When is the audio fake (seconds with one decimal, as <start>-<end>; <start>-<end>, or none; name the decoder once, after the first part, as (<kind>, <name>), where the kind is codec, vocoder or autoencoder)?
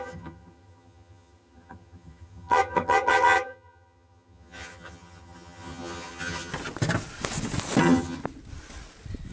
0.0-6.5 (vocoder, HiFi-GAN); 7.8-8.2